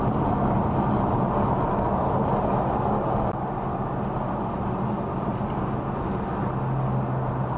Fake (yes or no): no